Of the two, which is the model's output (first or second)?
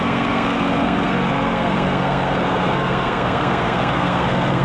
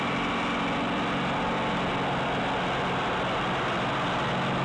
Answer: first